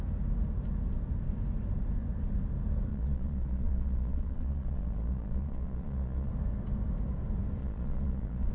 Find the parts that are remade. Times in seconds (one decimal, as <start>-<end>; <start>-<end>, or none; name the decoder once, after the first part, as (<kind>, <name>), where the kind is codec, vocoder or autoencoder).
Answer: 2.9-6.3 (vocoder, Vocos); 7.6-8.5